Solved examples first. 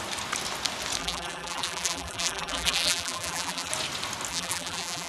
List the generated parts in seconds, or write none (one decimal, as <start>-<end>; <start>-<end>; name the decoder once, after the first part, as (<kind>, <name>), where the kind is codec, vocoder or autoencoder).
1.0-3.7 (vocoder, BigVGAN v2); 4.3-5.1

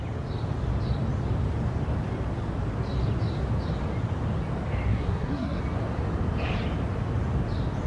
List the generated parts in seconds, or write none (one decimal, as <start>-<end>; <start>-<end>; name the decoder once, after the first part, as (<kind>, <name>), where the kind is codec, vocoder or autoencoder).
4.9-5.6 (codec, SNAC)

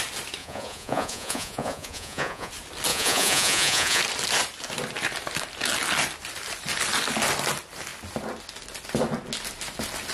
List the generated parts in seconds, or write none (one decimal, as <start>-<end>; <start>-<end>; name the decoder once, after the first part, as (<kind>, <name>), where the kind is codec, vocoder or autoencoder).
0.4-2.5 (vocoder, Vocos); 2.9-4.0

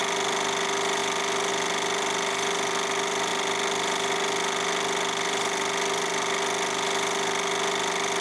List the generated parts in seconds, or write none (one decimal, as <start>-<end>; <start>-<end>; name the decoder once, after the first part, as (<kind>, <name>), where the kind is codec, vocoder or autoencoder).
none

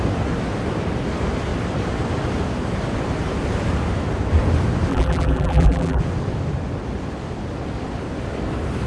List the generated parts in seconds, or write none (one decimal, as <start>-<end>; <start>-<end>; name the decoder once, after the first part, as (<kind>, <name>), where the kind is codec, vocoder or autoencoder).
4.9-6.0 (vocoder, BigVGAN v2)

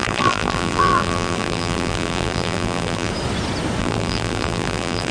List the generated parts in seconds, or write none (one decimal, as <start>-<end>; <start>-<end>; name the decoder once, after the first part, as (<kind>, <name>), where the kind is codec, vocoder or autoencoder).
0.0-3.1 (vocoder, BigVGAN v2); 3.8-5.1

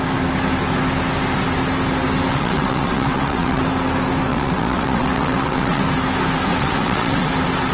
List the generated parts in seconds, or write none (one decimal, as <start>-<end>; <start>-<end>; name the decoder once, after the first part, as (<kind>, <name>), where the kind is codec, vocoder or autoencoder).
2.3-3.6 (vocoder, WaveNeXt); 4.3-5.8; 6.5-7.3

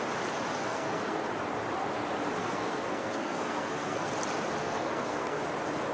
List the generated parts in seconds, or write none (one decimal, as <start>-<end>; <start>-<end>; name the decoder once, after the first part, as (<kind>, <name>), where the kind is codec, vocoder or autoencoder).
0.6-1.2 (codec, SNAC); 2.4-4.1; 4.6-5.4